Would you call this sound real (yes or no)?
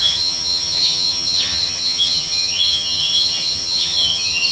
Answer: no